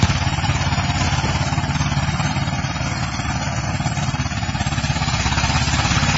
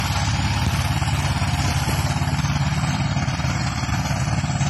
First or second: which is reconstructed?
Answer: first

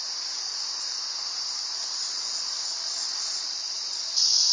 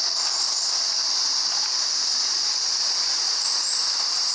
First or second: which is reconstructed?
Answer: first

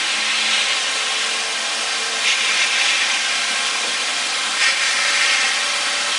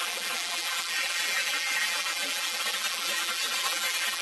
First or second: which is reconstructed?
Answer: second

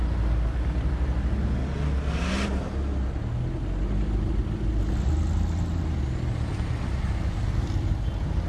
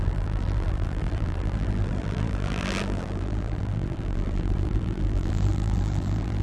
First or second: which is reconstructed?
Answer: second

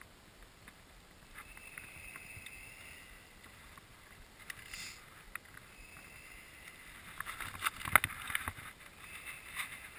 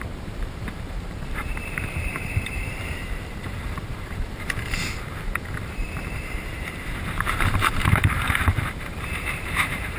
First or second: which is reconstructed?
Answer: second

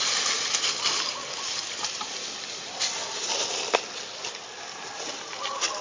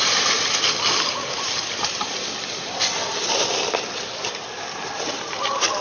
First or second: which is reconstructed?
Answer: second